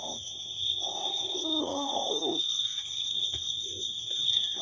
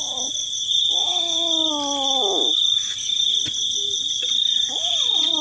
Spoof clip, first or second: first